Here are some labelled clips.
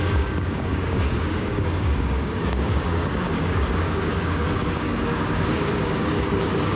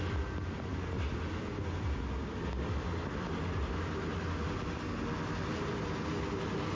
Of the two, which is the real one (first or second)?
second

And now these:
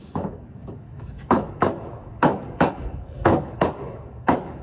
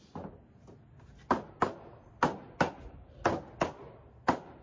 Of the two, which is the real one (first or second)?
second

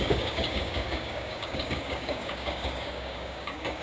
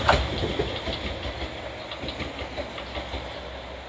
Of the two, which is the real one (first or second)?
second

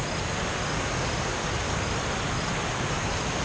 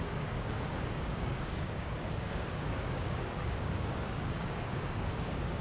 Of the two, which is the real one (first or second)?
first